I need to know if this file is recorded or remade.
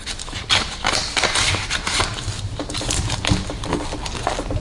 recorded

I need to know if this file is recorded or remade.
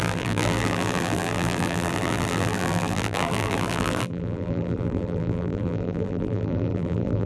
remade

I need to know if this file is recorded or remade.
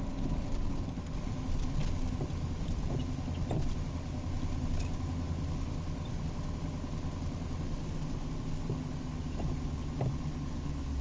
recorded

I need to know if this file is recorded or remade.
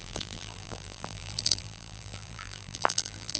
remade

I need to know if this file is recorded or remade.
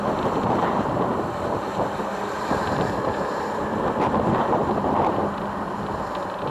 remade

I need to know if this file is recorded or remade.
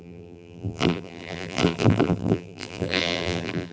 remade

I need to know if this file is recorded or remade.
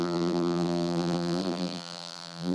remade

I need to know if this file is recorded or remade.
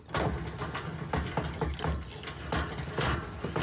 recorded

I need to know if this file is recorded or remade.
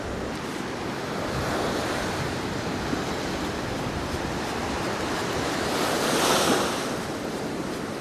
recorded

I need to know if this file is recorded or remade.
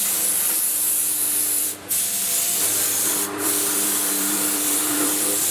remade